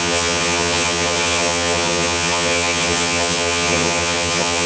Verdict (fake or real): fake